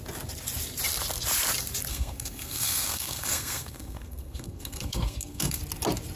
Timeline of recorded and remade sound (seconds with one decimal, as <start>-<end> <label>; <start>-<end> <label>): 0.0-1.9 recorded; 1.9-5.6 remade; 5.6-6.2 recorded